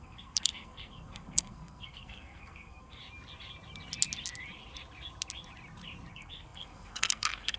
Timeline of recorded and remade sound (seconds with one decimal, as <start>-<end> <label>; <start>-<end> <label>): 0.0-3.0 remade; 3.0-6.1 recorded; 6.1-7.6 remade

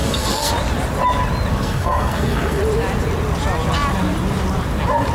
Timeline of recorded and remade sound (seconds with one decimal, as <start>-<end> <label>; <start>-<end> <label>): 0.0-0.5 remade; 0.5-1.5 recorded; 1.5-2.6 remade; 2.6-5.1 recorded

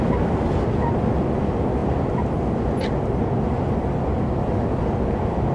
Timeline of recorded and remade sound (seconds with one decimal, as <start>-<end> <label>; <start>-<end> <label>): 0.0-5.5 recorded